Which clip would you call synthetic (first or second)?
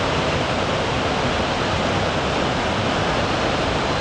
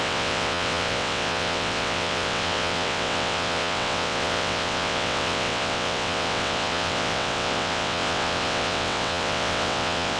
second